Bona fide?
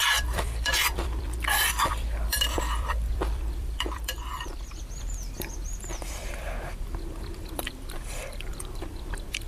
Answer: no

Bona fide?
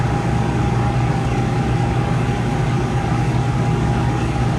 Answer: no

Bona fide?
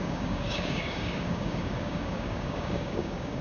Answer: no